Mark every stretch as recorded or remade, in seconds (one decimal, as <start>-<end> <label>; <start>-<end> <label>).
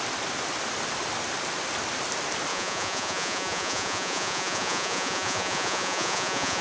0.0-2.5 recorded; 2.5-6.6 remade